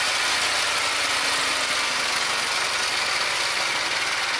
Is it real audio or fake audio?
real